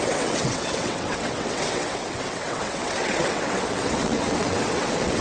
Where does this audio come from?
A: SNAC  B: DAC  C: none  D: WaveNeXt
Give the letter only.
D